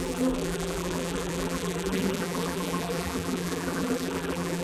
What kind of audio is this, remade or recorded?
remade